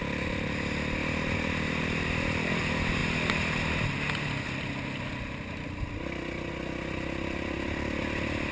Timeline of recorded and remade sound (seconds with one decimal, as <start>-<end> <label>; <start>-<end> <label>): 0.0-8.5 recorded